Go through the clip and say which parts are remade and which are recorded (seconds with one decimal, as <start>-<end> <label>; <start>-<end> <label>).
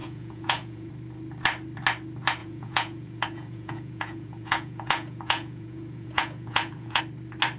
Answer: 0.0-0.9 remade; 0.9-2.4 recorded; 2.4-7.0 remade; 7.0-7.6 recorded